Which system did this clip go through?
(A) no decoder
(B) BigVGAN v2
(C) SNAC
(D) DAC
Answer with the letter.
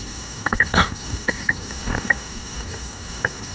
D